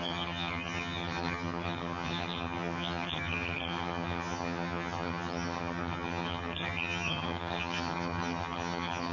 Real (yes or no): no